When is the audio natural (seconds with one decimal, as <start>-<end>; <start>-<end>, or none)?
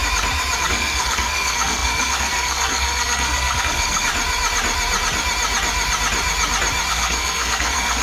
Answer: 0.0-0.6; 4.1-6.9